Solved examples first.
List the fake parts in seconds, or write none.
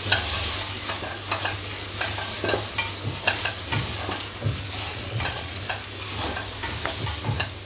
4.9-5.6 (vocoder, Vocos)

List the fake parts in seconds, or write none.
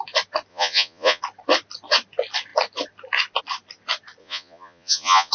0.5-1.2 (vocoder, Vocos); 4.2-5.3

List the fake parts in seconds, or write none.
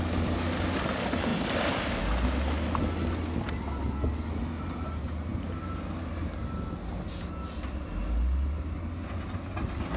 none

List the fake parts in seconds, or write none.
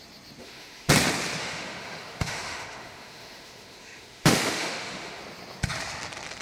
0.4-0.9 (autoencoder, DAC-VAE); 1.4-5.2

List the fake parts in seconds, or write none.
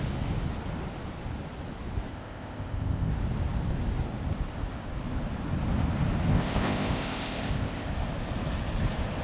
2.1-3.1 (codec, ZipCodec); 6.3-7.9